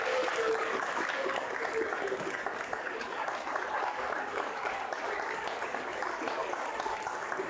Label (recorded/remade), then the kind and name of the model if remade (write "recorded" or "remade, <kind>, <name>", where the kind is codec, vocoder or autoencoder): remade, codec, DAC